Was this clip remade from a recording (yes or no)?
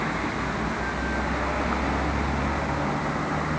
no